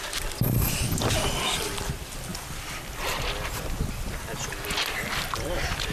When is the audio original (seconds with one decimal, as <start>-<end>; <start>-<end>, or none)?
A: none